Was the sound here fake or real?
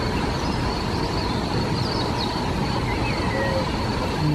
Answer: real